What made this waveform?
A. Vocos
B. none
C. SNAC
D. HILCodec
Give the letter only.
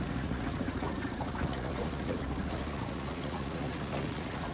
A